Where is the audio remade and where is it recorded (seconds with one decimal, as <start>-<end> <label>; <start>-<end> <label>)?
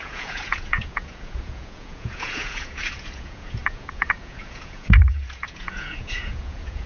0.0-6.9 remade